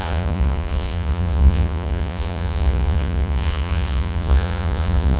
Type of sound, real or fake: fake